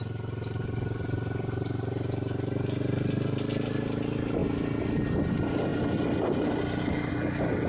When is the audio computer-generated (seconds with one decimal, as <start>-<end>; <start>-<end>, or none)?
none